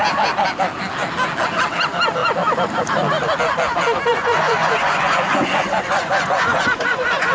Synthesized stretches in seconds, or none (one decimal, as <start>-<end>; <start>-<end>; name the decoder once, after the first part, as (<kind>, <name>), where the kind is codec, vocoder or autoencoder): 4.1-7.3 (vocoder, Vocos)